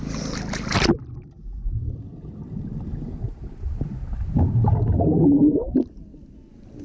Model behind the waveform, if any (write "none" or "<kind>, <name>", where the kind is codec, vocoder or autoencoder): none